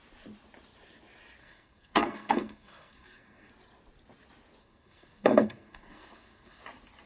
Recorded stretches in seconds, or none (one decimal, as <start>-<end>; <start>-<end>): 0.0-1.4; 3.5-4.6; 6.6-7.1